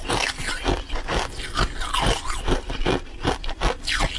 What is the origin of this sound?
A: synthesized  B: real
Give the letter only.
B